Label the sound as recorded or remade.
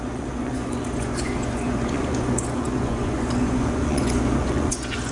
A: remade